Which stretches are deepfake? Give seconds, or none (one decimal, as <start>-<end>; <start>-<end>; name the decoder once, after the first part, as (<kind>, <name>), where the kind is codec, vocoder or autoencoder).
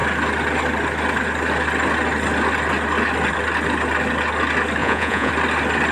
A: 4.8-5.3 (vocoder, Vocos)